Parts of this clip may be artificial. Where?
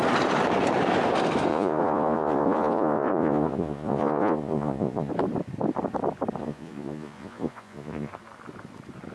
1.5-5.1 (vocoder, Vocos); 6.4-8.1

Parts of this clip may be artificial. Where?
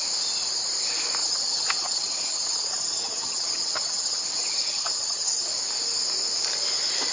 1.2-5.5 (vocoder, HiFi-GAN)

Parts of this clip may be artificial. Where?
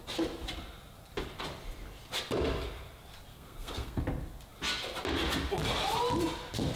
3.3-4.0 (codec, SNAC)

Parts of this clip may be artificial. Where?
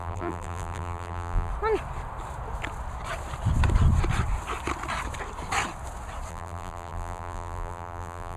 0.0-1.5 (vocoder, BigVGAN v2); 6.3-8.4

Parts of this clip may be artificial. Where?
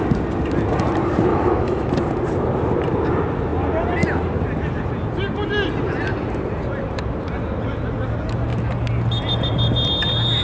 1.3-1.9 (autoencoder, DAC-VAE)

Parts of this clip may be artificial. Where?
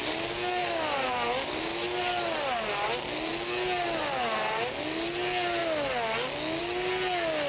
none